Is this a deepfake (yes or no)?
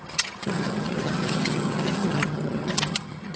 yes